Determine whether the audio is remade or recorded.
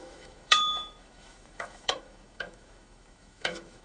remade